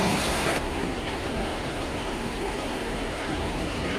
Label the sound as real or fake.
fake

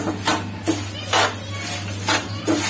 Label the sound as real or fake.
real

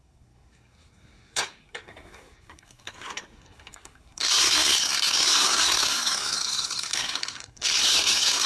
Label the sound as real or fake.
fake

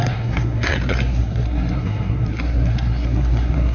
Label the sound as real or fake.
fake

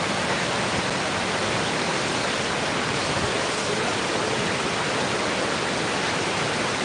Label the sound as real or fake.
real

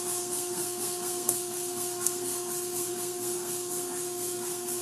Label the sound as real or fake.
fake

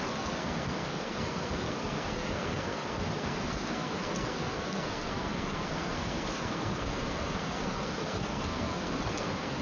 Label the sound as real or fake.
fake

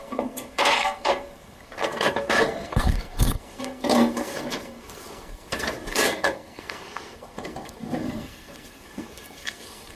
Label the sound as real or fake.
fake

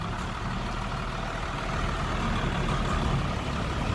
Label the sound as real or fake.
real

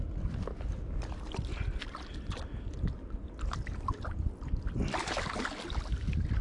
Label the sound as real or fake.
real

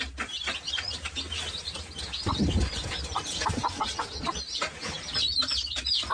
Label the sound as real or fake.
real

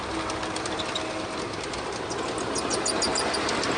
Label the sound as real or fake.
real